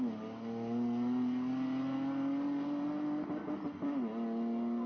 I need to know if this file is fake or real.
real